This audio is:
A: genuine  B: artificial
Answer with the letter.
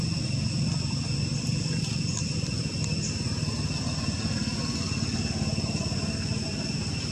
A